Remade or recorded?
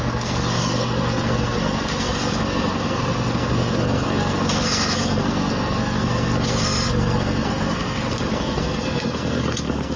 remade